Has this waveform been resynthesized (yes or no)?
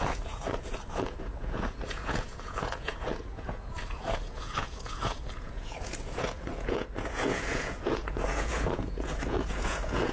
yes